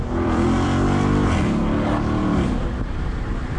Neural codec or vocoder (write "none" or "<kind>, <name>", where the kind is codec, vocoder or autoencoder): vocoder, BigVGAN v2